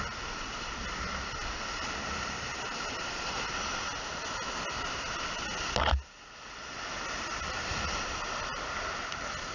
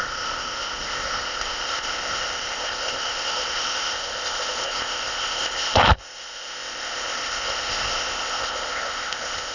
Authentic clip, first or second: first